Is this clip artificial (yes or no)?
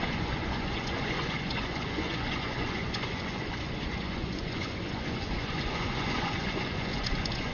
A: yes